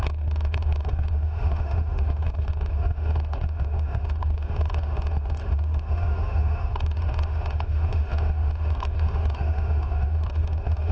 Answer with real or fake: fake